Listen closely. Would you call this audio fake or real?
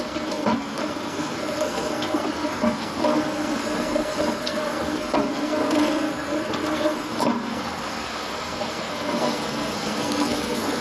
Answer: fake